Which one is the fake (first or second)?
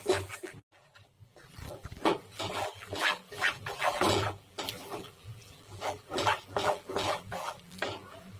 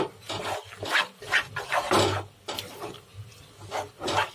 first